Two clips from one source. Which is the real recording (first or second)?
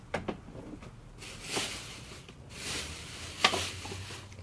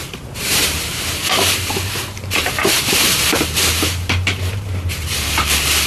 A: first